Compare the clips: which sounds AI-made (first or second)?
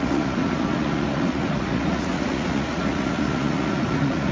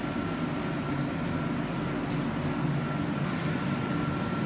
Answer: first